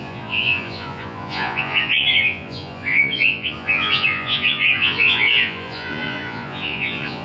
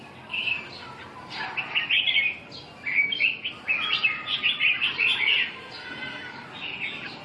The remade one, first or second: first